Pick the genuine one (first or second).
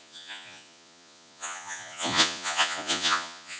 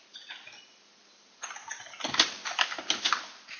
second